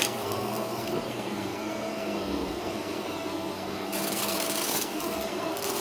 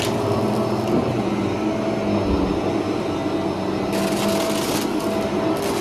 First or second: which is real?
second